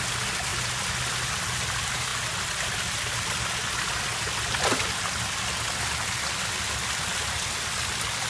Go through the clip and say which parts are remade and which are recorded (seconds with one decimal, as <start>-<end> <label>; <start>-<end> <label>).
0.0-8.3 recorded